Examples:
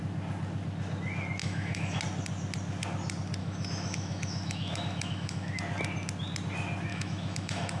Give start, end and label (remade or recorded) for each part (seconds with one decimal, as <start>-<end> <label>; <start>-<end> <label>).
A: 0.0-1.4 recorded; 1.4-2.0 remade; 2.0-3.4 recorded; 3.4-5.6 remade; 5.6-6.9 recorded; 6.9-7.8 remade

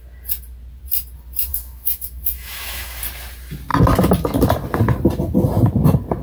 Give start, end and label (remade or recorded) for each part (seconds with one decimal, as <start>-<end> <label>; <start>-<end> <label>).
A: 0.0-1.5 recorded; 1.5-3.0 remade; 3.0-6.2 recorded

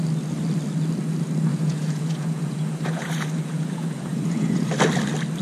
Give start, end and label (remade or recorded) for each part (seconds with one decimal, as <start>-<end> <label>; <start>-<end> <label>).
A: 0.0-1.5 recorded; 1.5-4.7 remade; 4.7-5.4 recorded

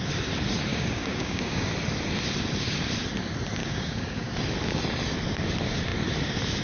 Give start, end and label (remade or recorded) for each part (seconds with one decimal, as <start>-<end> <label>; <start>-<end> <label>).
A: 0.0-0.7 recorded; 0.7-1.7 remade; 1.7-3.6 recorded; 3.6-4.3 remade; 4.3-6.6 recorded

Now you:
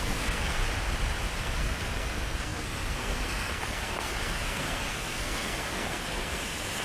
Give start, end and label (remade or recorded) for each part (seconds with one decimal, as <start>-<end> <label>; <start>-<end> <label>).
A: 0.0-0.6 remade; 0.6-1.4 recorded; 1.4-6.8 remade